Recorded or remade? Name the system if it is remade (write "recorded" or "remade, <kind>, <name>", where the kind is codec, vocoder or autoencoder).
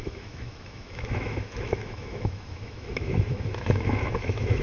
remade, autoencoder, DAC-VAE